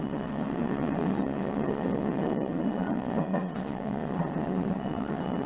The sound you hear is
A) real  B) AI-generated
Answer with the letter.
B